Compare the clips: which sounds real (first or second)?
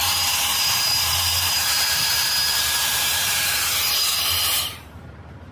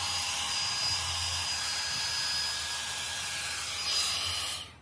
second